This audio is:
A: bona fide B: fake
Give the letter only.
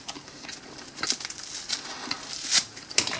A